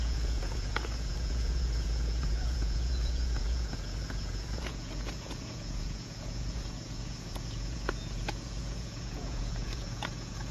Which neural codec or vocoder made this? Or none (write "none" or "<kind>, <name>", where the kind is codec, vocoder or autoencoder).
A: vocoder, Vocos